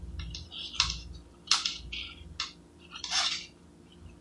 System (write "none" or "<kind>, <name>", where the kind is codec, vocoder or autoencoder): none